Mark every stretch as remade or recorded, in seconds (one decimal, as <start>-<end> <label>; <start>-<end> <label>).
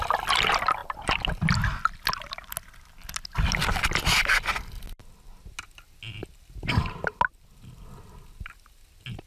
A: 0.0-9.3 recorded